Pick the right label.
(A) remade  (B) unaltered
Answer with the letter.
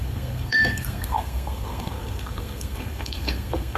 A